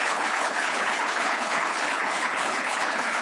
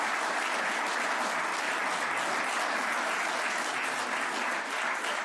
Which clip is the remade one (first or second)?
first